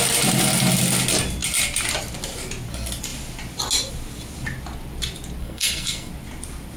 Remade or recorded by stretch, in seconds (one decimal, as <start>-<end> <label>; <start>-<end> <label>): 0.0-5.4 recorded; 5.4-6.1 remade; 6.1-6.8 recorded